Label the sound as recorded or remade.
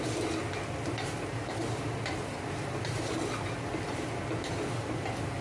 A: recorded